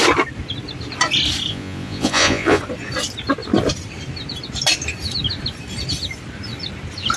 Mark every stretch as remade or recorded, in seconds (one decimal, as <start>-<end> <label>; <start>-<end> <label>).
0.0-1.5 recorded; 1.5-2.6 remade; 2.6-7.2 recorded